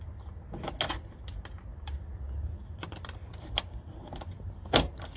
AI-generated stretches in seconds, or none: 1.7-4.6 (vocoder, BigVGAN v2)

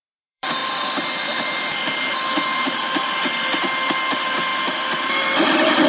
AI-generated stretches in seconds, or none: 0.0-0.6 (vocoder, BigVGAN v2); 4.1-4.5; 5.1-5.9

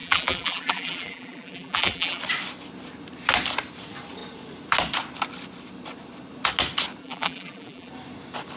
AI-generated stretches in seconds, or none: 0.0-2.2 (vocoder, BigVGAN v2); 7.0-7.9

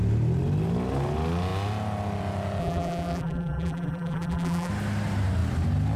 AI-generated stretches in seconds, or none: 2.6-4.7 (vocoder, BigVGAN v2)

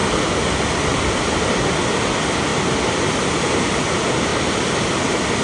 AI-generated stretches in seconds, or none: 0.0-1.1 (vocoder, BigVGAN v2); 4.3-4.9